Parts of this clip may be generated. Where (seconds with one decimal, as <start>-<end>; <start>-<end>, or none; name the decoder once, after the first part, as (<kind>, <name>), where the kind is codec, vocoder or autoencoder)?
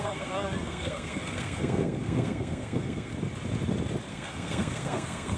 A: 0.0-3.1 (codec, SNAC); 4.1-5.4